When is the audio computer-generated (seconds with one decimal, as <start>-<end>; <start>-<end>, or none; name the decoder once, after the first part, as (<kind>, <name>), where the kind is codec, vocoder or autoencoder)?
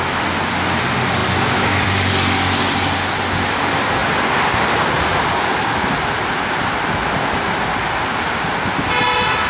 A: 1.2-2.1 (vocoder, BigVGAN v2); 4.0-5.4